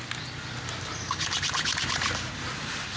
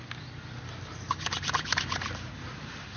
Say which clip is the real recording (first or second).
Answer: first